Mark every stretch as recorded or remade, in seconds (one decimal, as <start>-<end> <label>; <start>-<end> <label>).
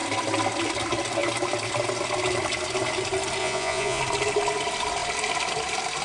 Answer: 0.0-3.4 recorded; 3.4-4.0 remade; 4.0-6.0 recorded